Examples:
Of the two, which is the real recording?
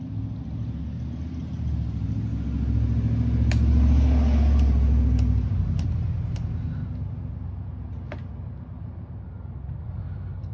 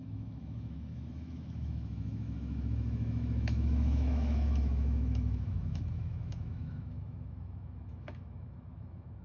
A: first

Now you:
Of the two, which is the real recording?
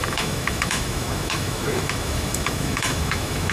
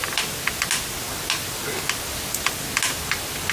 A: second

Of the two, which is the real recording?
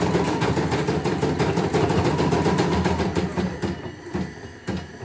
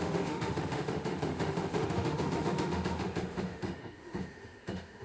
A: first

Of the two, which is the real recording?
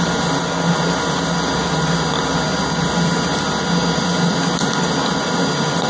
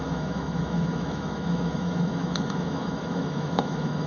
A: first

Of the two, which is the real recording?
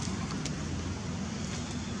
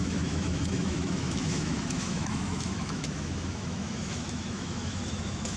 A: first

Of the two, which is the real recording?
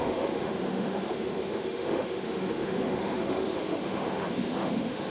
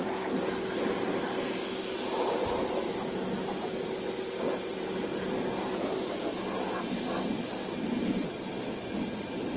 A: second